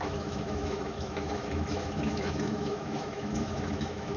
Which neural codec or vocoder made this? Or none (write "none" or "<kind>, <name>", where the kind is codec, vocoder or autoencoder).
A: autoencoder, DAC-VAE